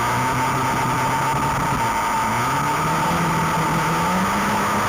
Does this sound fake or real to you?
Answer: real